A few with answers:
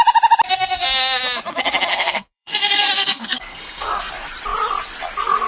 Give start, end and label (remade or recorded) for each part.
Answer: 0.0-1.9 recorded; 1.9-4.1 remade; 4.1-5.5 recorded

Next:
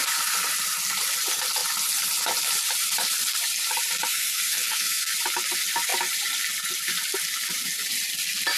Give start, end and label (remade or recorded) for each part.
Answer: 0.0-4.1 recorded; 4.1-5.1 remade; 5.1-8.6 recorded

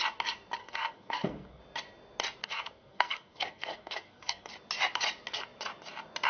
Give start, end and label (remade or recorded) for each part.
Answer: 0.0-0.6 recorded; 0.6-1.6 remade; 1.6-2.4 recorded; 2.4-4.5 remade; 4.5-6.3 recorded

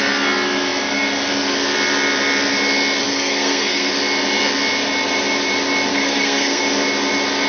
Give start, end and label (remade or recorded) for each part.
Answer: 0.0-3.0 recorded; 3.0-3.9 remade; 3.9-5.9 recorded; 5.9-6.6 remade; 6.6-7.5 recorded